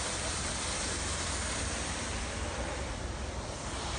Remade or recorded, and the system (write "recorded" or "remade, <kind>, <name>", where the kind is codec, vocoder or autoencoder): recorded